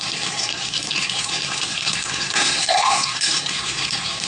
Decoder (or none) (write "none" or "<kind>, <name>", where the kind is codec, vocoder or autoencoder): codec, SNAC